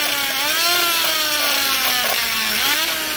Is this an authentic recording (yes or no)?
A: yes